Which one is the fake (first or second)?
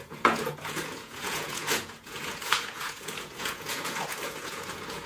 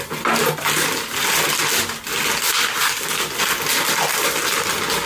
first